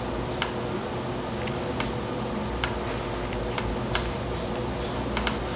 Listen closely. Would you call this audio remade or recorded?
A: recorded